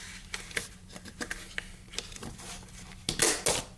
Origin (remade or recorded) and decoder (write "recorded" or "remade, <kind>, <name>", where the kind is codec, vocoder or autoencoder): recorded